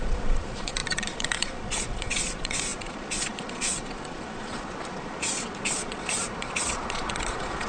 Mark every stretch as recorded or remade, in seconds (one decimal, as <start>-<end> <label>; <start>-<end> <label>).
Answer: 0.0-7.7 remade